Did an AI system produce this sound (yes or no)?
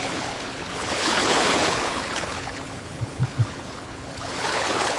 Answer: yes